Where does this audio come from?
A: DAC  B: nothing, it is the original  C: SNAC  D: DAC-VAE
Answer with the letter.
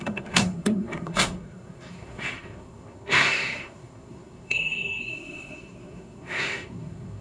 C